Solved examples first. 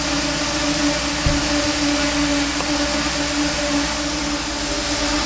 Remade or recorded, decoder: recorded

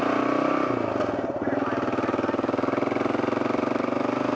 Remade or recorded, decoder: recorded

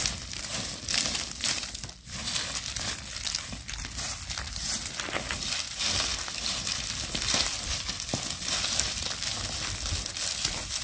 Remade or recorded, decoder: recorded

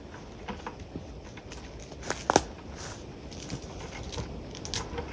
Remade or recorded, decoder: recorded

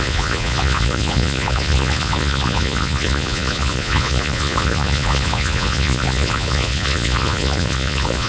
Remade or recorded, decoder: remade, vocoder, Vocos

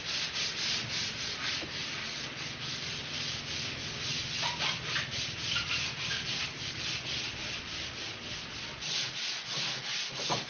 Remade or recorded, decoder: remade, vocoder, BigVGAN v2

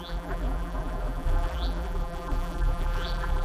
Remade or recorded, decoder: remade, vocoder, BigVGAN v2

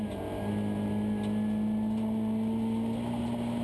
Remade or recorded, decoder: recorded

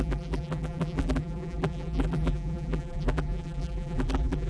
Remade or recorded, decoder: remade, vocoder, BigVGAN v2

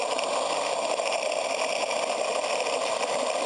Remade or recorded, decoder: recorded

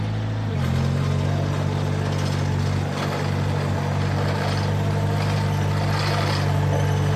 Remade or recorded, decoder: recorded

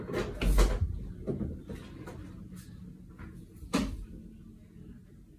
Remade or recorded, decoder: recorded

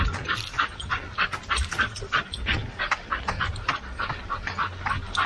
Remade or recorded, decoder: recorded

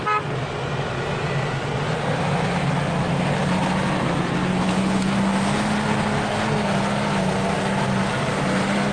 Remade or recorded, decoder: recorded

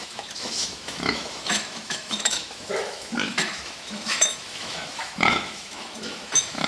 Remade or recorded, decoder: remade, autoencoder, DAC-VAE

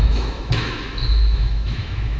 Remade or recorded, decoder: remade, autoencoder, DAC-VAE